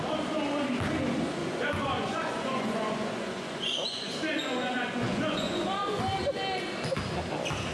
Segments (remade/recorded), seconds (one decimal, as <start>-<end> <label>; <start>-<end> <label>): 0.0-1.4 recorded; 1.4-6.0 remade; 6.0-7.7 recorded